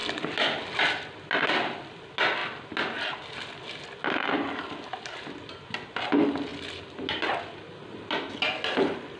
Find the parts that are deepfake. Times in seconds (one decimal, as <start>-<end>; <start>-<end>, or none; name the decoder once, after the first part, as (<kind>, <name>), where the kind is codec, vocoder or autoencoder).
none

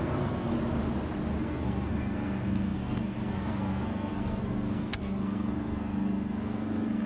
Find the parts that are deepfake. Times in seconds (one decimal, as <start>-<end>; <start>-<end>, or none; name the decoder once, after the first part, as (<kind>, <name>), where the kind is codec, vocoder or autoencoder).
0.0-0.5 (codec, SNAC); 1.4-7.1